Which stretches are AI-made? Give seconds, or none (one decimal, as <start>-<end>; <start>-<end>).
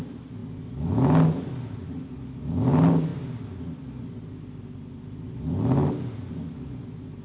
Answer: none